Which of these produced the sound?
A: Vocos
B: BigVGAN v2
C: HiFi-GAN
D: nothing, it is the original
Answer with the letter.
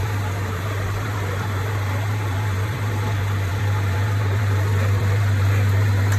B